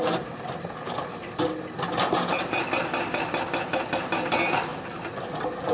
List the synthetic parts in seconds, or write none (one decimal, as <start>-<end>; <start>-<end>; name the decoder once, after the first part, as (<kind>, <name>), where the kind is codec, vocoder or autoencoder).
none